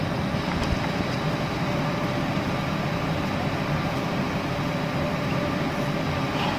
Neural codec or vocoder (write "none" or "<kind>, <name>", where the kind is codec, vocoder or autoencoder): none